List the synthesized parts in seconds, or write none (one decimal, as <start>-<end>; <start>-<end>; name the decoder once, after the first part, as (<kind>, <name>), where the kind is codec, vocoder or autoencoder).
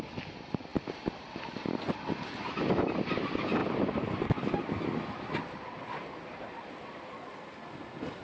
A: none